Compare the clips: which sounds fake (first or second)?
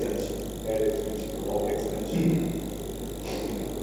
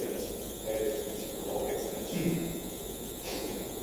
second